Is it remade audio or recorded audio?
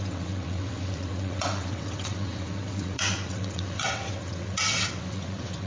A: remade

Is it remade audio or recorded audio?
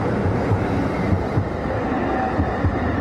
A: recorded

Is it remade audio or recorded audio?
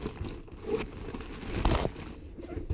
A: recorded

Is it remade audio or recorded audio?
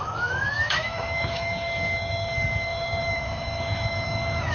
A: remade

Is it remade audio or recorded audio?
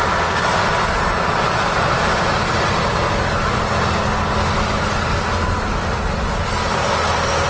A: recorded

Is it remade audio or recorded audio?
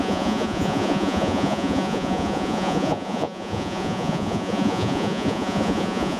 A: remade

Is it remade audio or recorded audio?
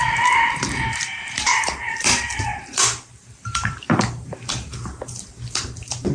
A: remade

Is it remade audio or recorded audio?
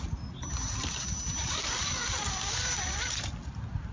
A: recorded